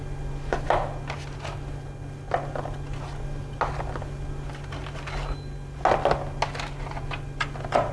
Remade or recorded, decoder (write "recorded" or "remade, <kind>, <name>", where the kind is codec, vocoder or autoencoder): recorded